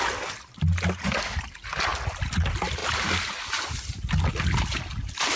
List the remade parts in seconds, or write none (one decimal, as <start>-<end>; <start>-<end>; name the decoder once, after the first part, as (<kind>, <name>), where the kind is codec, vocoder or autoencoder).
none